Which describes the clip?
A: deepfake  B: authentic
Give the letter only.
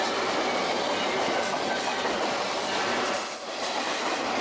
B